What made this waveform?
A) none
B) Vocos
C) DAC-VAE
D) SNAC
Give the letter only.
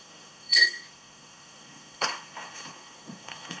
D